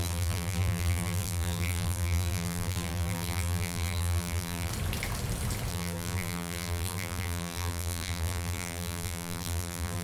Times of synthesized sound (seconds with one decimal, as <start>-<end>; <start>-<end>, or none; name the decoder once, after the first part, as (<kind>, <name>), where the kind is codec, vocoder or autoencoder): 0.0-4.7 (vocoder, BigVGAN v2); 5.7-10.0